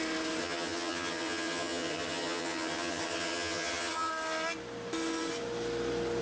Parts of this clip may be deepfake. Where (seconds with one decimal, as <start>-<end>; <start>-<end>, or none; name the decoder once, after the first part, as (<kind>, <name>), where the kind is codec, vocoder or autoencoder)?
0.4-4.1 (vocoder, HiFi-GAN)